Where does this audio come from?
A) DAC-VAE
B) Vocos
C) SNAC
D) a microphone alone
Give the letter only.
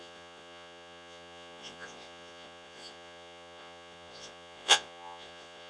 B